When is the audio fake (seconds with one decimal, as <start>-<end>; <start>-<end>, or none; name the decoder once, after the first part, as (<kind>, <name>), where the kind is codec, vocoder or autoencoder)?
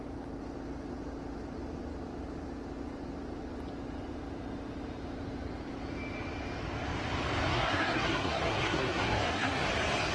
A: 7.5-9.7 (codec, SNAC)